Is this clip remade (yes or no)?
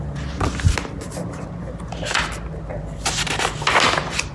no